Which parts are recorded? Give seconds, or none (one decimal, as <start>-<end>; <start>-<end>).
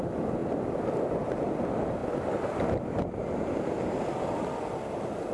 2.0-5.3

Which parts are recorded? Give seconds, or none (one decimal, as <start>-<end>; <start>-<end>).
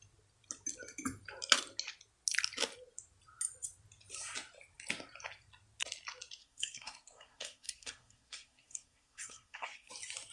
0.0-6.4; 9.9-10.3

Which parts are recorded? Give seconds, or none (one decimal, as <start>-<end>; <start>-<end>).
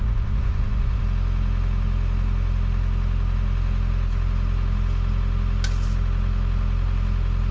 1.0-7.5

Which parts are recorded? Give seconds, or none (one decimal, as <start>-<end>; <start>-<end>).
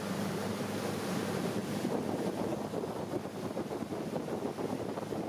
0.0-5.3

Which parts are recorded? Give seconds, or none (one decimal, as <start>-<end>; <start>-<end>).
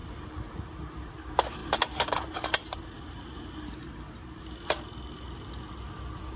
1.1-1.6; 4.4-6.4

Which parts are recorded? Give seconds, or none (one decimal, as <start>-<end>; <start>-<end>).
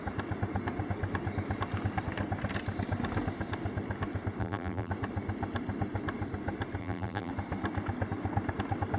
0.0-4.4; 4.9-6.8; 7.3-9.0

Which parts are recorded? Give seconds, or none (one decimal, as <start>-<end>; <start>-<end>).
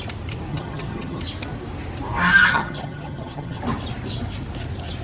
0.0-0.5; 1.2-2.5; 3.6-5.0